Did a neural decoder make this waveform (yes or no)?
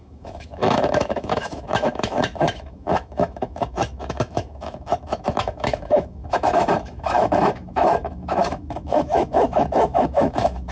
yes